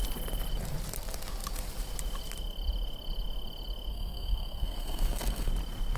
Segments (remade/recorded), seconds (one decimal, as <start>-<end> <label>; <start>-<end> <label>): 0.0-3.9 recorded; 3.9-5.5 remade; 5.5-6.0 recorded